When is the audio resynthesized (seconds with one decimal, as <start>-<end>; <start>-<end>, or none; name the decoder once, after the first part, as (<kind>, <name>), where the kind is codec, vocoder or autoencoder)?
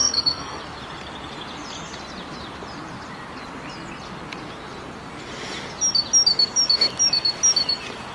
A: 0.0-0.6 (codec, SNAC)